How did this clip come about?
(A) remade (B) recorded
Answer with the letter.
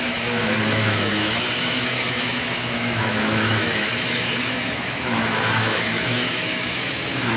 A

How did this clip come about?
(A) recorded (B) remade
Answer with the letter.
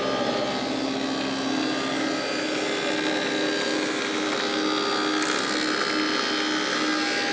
A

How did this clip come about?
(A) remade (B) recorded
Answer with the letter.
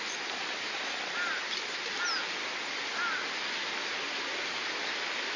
B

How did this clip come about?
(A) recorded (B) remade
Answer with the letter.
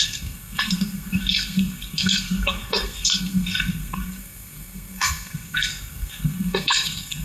B